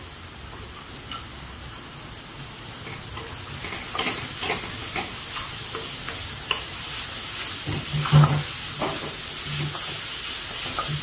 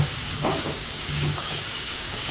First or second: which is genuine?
first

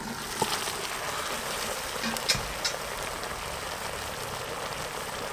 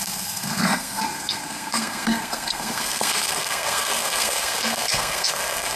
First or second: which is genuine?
first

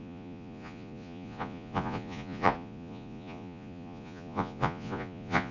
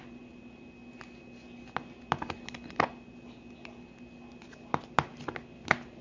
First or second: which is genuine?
second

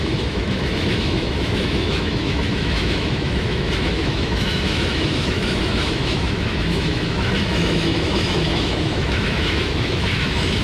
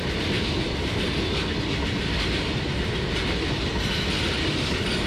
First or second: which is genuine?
second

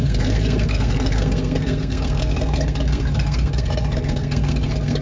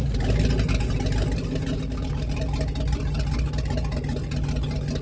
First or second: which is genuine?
second